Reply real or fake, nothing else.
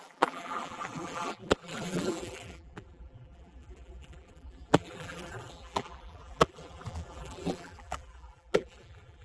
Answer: fake